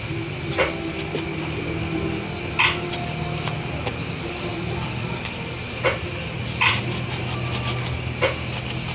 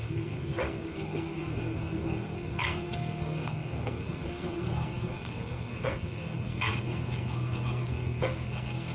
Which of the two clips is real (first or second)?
first